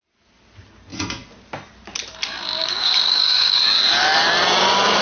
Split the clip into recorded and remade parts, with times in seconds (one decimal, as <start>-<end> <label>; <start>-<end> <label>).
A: 0.0-2.6 recorded; 2.6-3.6 remade; 3.6-5.0 recorded